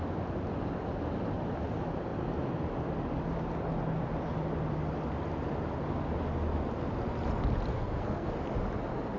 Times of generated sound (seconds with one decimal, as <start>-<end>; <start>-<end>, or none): 7.7-8.3